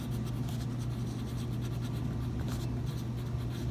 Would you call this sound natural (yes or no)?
yes